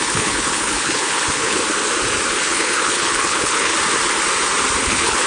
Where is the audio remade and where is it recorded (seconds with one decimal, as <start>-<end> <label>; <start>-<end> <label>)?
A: 0.0-1.6 remade; 1.6-2.3 recorded; 2.3-3.7 remade; 3.7-4.8 recorded; 4.8-5.3 remade